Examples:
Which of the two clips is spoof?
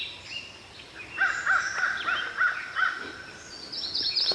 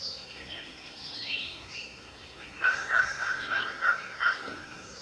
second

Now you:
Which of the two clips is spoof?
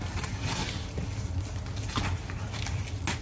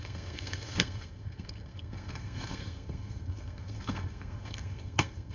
second